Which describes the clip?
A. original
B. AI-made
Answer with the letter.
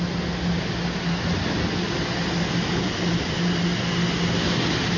A